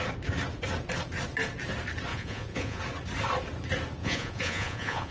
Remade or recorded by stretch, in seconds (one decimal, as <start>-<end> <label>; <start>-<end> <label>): 0.0-2.1 recorded; 2.1-2.8 remade; 2.8-4.0 recorded; 4.0-5.1 remade